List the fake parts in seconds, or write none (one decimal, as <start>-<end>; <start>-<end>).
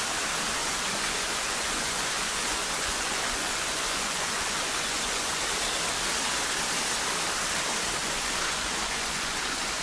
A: 0.6-5.4; 8.0-9.8